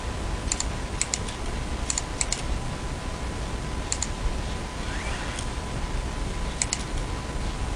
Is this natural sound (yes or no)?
yes